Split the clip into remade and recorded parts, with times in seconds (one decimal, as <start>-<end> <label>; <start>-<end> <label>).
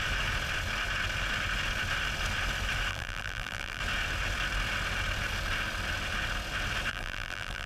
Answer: 0.0-2.9 recorded; 2.9-3.8 remade; 3.8-6.9 recorded; 6.9-7.7 remade